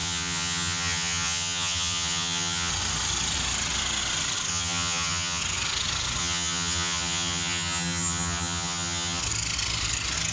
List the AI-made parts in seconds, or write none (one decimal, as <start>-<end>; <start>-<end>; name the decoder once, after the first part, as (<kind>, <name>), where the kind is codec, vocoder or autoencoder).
0.0-2.7 (vocoder, HiFi-GAN); 4.5-5.4; 6.2-9.2